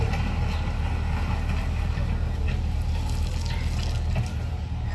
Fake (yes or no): no